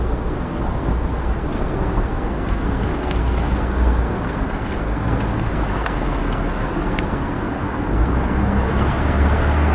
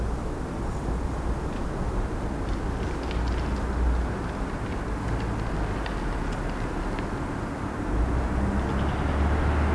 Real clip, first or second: second